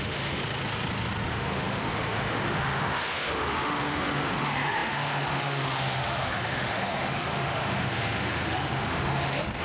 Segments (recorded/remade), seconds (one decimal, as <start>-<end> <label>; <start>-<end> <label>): 0.0-0.4 remade; 0.4-1.3 recorded; 1.3-9.6 remade